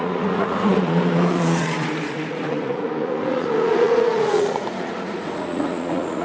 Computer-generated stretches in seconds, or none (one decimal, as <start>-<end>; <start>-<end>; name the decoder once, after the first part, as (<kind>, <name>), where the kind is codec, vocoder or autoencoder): 0.0-6.2 (vocoder, Vocos)